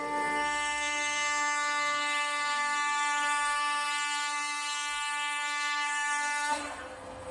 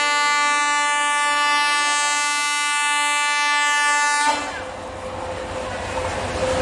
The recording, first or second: second